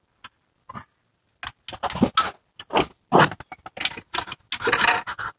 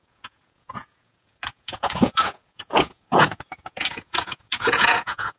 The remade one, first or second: second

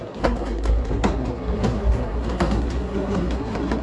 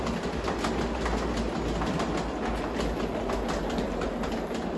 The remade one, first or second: first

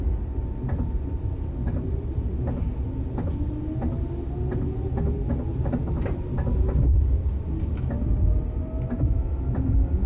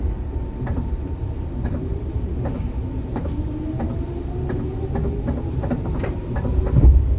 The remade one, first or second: second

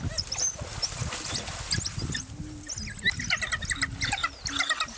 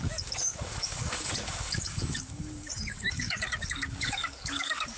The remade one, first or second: second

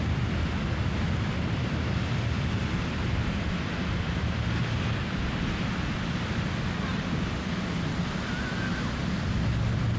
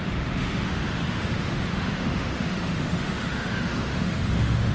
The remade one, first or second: second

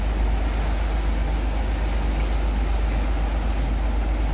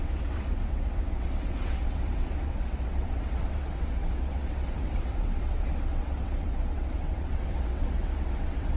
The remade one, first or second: second